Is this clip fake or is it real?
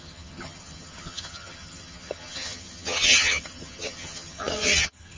fake